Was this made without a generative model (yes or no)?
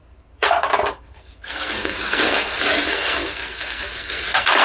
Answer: no